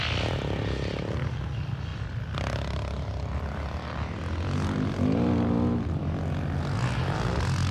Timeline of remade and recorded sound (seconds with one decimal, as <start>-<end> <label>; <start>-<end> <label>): 0.0-7.7 recorded